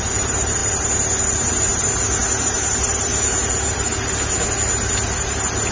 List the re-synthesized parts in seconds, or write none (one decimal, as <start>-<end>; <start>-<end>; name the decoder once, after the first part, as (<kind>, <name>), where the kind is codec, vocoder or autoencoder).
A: none